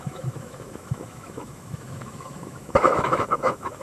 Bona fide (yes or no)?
no